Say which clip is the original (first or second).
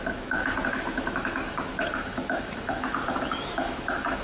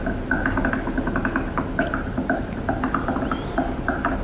second